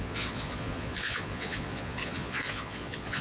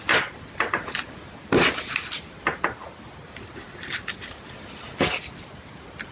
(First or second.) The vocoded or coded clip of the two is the first